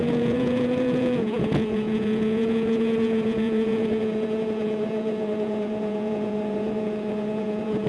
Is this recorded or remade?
remade